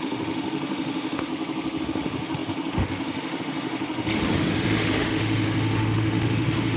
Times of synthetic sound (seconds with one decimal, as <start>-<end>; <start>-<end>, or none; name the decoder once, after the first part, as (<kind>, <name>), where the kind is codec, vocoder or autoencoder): 0.0-1.3 (autoencoder, DAC-VAE); 1.8-6.8